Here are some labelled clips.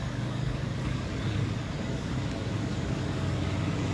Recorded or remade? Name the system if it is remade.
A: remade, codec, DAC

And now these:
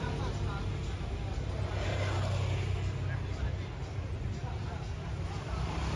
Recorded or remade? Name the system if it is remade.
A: recorded